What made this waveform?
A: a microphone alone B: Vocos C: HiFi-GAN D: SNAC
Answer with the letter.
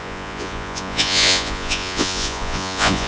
B